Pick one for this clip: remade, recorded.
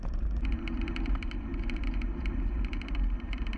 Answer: remade